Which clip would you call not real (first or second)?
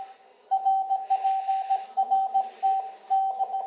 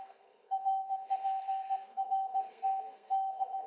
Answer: second